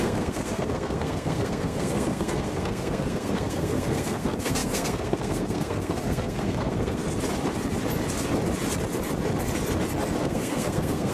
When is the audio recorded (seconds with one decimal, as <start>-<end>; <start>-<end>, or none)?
7.0-10.2